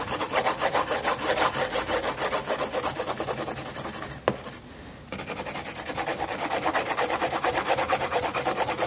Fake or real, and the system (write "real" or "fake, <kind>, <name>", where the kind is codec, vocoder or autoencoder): real